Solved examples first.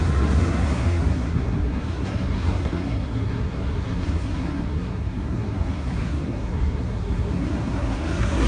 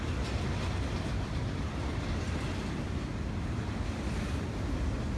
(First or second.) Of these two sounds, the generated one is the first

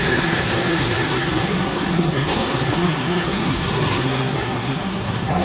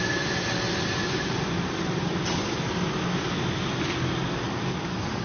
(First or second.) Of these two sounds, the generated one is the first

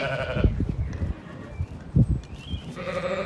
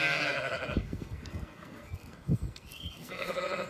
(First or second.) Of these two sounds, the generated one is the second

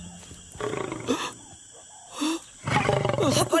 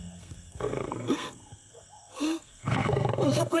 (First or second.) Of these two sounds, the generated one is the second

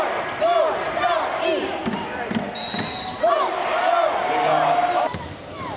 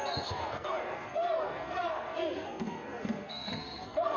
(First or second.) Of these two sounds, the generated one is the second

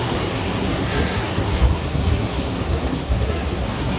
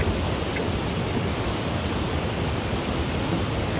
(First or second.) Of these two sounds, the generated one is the first